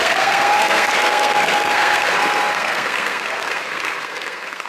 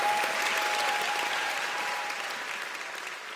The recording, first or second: second